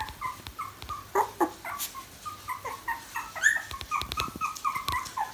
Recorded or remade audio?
recorded